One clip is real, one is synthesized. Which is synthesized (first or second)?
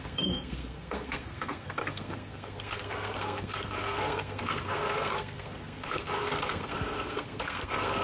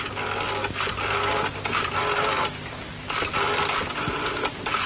first